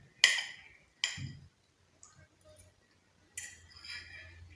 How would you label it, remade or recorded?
recorded